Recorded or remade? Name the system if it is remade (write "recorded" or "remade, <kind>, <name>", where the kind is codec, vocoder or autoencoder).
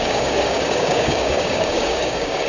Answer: remade, codec, DAC